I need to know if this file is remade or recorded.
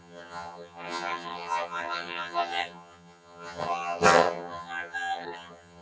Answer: remade